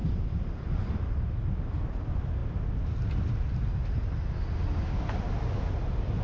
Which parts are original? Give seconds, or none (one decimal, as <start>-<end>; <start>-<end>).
1.6-6.2